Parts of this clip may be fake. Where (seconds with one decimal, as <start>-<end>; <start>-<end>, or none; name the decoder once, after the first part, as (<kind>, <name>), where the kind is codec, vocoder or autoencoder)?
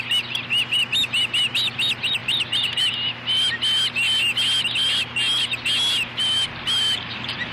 2.2-2.9 (vocoder, BigVGAN v2)